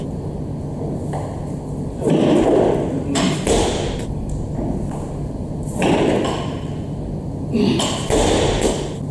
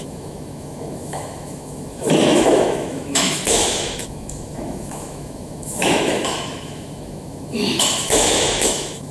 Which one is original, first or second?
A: first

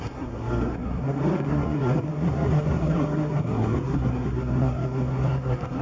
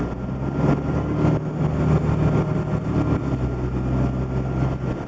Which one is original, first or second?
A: second